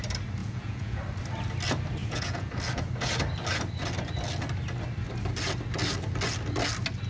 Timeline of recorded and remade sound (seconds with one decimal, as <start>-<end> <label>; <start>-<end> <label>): 0.0-0.4 recorded; 0.4-1.0 remade; 1.0-2.0 recorded; 2.0-2.5 remade; 2.5-7.1 recorded